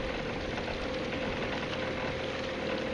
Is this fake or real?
real